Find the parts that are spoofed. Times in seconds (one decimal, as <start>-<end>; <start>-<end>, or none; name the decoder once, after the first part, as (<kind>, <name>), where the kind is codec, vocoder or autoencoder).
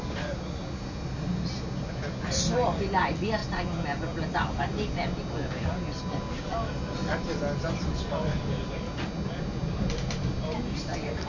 none